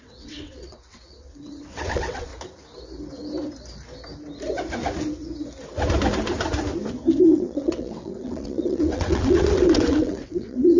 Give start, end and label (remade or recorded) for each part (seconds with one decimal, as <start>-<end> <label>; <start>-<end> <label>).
0.0-2.3 remade; 2.3-7.2 recorded; 7.2-10.8 remade